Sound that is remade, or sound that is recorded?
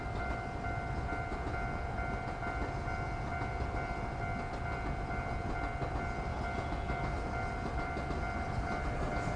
recorded